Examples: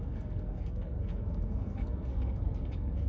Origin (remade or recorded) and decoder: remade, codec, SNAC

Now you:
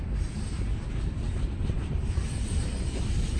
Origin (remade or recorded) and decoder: recorded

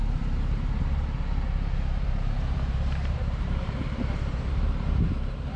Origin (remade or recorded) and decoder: remade, vocoder, BigVGAN v2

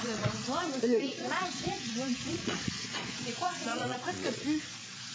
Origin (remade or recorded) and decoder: remade, vocoder, Vocos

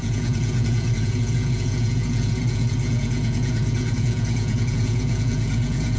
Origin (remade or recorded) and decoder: remade, vocoder, Vocos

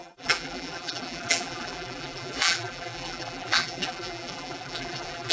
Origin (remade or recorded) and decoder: remade, vocoder, BigVGAN v2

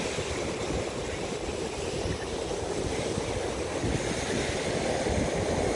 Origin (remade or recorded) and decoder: remade, vocoder, BigVGAN v2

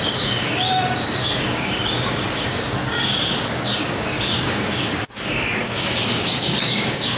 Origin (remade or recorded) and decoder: remade, codec, DAC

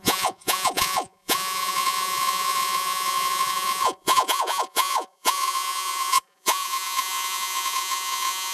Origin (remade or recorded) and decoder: remade, vocoder, Vocos